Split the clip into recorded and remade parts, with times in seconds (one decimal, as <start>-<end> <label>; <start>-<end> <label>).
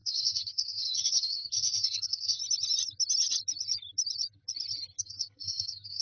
0.0-2.4 remade; 2.4-5.0 recorded; 5.0-6.0 remade